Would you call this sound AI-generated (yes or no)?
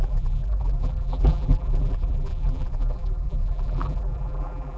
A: yes